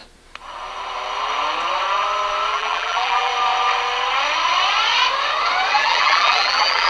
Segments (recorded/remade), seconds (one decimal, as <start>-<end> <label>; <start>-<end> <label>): 0.0-2.5 recorded; 2.5-3.3 remade; 3.3-5.7 recorded; 5.7-6.9 remade